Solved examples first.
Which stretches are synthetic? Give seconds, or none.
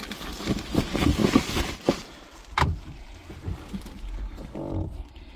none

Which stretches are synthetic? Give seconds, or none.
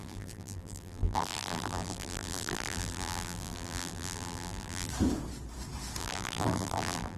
0.0-4.9; 6.0-7.2